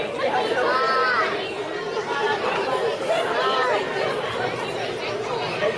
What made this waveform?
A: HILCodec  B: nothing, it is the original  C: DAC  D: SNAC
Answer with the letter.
B